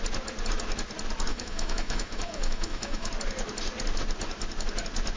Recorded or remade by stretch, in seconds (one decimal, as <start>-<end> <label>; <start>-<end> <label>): 0.0-1.3 recorded; 1.3-3.1 remade; 3.1-5.2 recorded